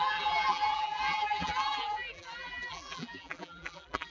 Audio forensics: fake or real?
fake